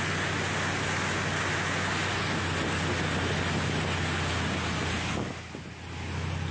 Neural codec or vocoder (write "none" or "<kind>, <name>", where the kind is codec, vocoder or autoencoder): none